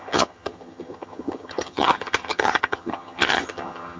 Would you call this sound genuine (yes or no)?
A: no